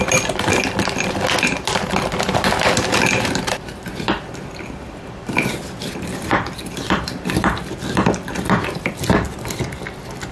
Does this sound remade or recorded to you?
remade